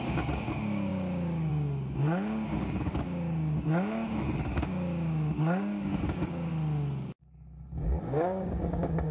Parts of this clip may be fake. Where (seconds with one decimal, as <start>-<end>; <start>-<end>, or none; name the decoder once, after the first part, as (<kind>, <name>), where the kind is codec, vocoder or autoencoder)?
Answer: 0.0-6.5 (codec, DAC); 8.0-9.1